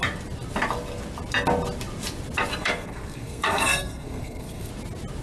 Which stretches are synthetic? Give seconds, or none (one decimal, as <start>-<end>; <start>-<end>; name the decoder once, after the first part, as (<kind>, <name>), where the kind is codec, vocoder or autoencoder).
2.5-4.7 (codec, SNAC)